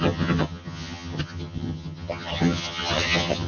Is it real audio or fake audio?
fake